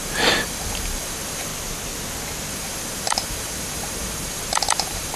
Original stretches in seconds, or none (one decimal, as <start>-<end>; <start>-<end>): 1.5-2.5